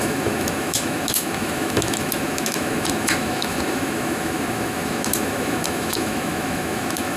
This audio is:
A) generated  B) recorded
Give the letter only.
A